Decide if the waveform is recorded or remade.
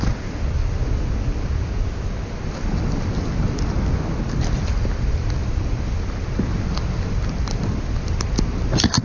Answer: recorded